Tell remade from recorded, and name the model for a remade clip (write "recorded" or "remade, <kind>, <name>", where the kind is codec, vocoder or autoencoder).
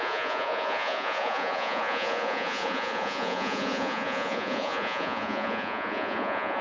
remade, vocoder, Vocos